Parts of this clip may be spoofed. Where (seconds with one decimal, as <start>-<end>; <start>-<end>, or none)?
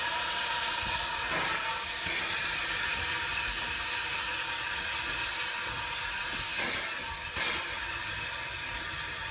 none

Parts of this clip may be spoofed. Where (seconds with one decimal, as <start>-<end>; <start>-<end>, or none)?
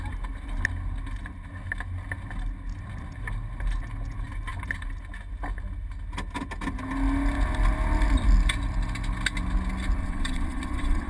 10.0-11.1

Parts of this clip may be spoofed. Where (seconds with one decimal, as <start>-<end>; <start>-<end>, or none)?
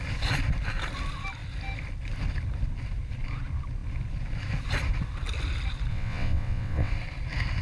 5.9-6.9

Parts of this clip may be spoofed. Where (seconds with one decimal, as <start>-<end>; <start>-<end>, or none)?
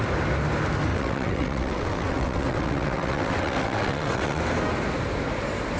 0.9-4.4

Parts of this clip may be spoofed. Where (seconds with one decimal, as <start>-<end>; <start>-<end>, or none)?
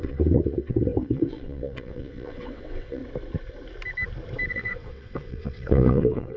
0.0-3.0; 4.5-6.4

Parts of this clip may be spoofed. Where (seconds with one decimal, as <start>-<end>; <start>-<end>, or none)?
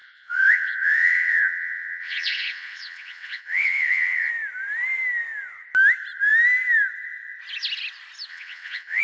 0.0-4.3; 8.3-9.0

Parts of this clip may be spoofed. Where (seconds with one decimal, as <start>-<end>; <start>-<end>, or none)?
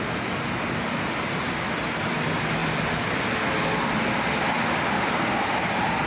none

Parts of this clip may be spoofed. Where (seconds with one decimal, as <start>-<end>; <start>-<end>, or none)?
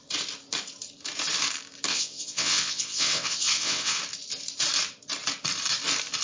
1.9-4.0